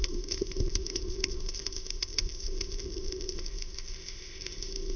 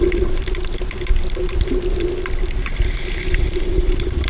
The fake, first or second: first